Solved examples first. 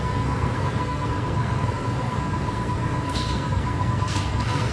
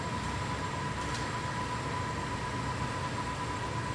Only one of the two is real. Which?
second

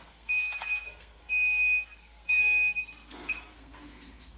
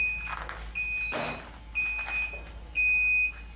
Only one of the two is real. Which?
second